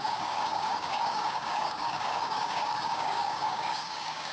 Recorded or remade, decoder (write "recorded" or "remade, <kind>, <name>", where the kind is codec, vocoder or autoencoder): remade, codec, DAC